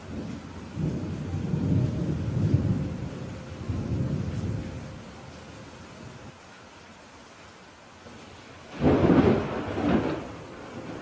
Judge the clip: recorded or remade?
recorded